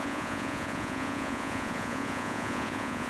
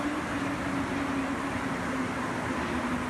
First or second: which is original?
second